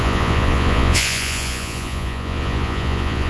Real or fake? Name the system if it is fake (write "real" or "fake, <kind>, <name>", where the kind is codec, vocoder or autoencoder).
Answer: fake, vocoder, Vocos